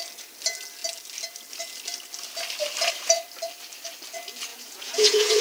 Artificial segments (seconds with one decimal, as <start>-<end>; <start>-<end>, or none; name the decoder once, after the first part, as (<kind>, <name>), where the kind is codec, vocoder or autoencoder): 4.5-5.4 (vocoder, Vocos)